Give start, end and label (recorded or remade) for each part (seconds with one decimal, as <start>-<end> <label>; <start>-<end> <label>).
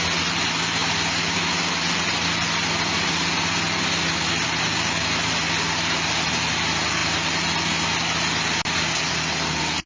0.0-9.9 recorded